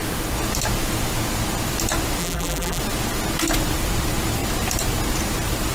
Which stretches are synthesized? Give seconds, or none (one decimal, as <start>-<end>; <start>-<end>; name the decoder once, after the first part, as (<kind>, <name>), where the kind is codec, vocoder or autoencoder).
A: 2.2-2.8 (vocoder, BigVGAN v2)